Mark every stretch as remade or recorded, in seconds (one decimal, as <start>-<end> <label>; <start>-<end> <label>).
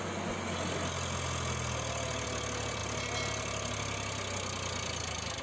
0.0-5.4 recorded